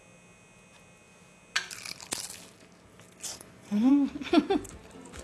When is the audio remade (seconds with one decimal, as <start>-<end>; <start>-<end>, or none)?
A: 3.3-3.9